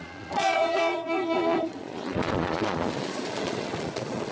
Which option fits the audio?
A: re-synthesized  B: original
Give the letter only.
A